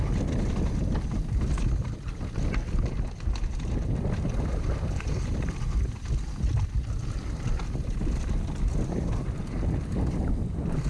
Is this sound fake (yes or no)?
no